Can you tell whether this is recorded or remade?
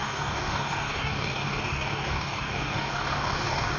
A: remade